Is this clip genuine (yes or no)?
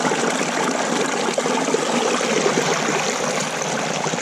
yes